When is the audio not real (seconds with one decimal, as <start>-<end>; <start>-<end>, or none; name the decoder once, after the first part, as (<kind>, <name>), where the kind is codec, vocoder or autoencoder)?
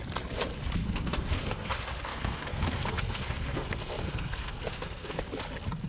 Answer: 0.8-1.7 (codec, SNAC); 2.1-5.2